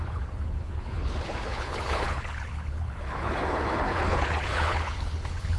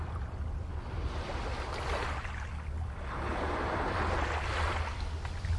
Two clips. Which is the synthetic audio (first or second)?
first